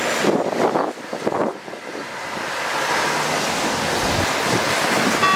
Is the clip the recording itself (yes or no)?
yes